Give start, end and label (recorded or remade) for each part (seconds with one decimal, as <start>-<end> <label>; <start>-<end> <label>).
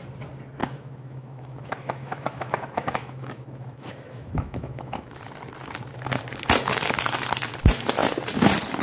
0.0-0.6 recorded; 0.6-5.2 remade; 5.2-8.8 recorded